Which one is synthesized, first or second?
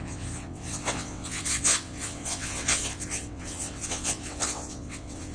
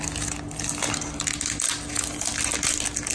first